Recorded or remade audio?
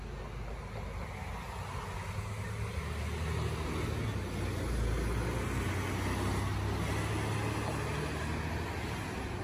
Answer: recorded